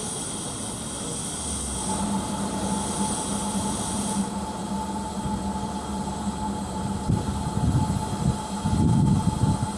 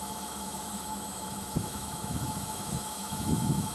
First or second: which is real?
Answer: first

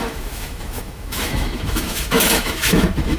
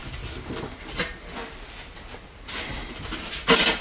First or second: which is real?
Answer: second